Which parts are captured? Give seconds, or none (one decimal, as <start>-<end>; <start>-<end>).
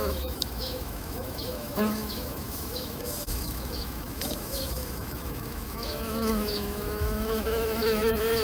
none